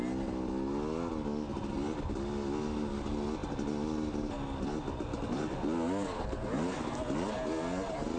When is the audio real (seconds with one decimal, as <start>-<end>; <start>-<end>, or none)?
0.0-8.2